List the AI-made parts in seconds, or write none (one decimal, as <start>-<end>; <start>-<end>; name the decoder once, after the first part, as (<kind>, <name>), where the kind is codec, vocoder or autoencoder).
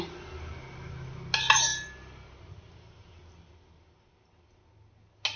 none